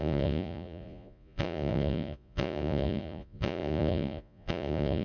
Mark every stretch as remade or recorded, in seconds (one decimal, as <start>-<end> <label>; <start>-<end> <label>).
0.0-5.0 remade